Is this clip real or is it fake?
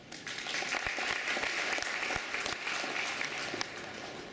real